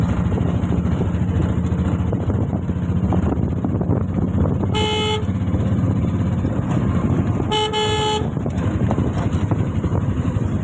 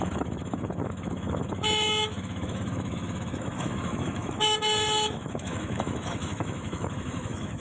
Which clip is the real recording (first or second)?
first